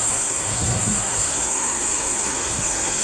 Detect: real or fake fake